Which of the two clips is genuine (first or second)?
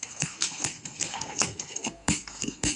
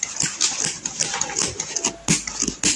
second